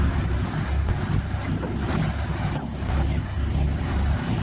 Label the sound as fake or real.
real